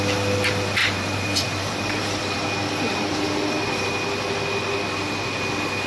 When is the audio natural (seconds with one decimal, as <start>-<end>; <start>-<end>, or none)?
0.0-0.8; 2.4-2.9; 3.9-5.9